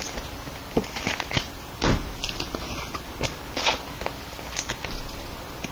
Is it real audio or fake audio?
real